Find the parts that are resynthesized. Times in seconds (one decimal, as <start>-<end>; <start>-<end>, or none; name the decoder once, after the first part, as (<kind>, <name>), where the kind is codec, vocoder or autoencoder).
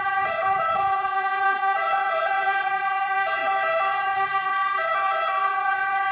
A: 0.0-3.4 (vocoder, Vocos); 3.9-6.1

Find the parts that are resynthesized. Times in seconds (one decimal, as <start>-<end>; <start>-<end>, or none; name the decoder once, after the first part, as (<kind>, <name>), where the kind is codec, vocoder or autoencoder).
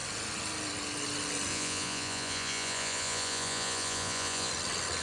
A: 1.5-4.5 (vocoder, Vocos)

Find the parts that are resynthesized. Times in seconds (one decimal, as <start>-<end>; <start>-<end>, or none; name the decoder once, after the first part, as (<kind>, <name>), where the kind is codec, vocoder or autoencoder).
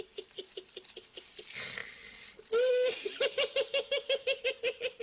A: 3.7-4.5 (autoencoder, DAC-VAE)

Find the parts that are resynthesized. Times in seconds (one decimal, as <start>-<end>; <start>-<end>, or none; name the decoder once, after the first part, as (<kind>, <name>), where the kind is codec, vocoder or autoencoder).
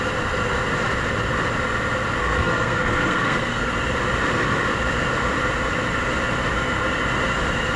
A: 2.2-3.7 (codec, SNAC)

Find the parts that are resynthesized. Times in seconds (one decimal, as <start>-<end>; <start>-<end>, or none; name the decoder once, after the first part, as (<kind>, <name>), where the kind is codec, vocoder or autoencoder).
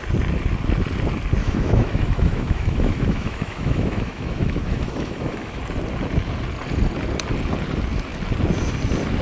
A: 1.4-5.6 (autoencoder, DAC-VAE)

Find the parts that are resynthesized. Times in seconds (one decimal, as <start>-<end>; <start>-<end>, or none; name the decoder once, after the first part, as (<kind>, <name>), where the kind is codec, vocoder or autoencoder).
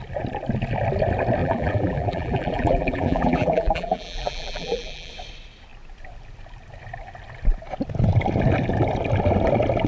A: 1.4-5.1 (vocoder, BigVGAN v2)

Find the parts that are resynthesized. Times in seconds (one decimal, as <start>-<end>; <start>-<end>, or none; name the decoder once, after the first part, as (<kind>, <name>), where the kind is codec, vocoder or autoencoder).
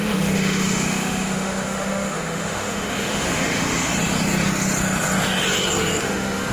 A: 0.0-3.9 (autoencoder, DAC-VAE); 6.0-6.5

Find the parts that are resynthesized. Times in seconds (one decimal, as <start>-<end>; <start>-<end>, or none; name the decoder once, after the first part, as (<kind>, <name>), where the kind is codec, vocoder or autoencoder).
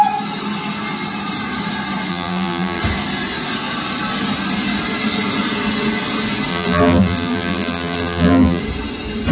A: 2.1-2.8 (vocoder, BigVGAN v2); 6.5-8.6